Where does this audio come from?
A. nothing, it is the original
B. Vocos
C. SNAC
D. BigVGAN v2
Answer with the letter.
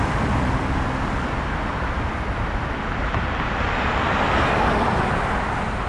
A